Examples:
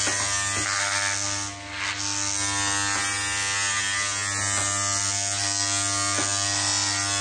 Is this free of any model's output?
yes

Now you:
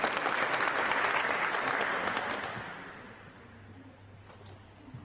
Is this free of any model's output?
yes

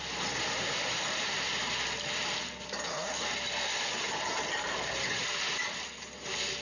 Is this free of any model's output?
yes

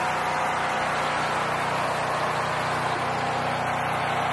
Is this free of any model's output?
yes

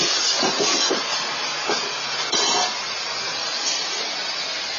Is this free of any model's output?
yes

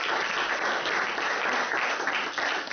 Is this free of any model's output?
yes